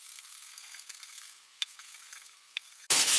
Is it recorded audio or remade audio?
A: remade